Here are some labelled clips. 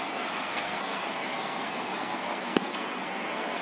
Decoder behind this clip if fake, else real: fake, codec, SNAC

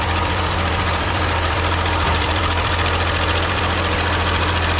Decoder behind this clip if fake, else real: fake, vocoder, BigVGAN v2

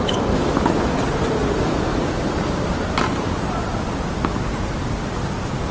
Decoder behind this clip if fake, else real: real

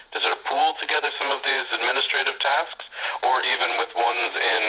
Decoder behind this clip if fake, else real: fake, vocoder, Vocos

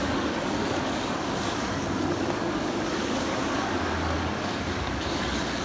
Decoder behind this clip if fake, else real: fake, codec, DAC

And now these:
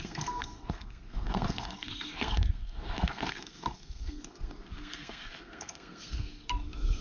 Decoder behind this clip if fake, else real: fake, codec, SNAC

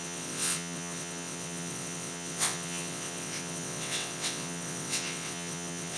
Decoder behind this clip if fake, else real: fake, vocoder, WaveNeXt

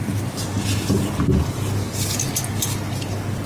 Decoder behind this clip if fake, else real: real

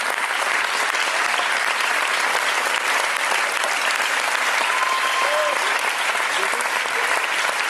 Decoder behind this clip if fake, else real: real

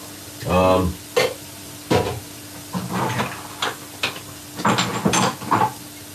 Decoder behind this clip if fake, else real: real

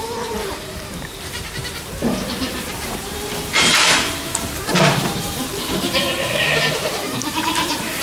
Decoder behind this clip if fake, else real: fake, vocoder, BigVGAN v2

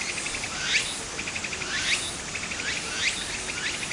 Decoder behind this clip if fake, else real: real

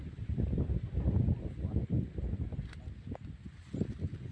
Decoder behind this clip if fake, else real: real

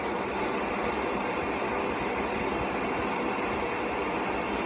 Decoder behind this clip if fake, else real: real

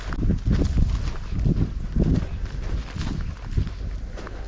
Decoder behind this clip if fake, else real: real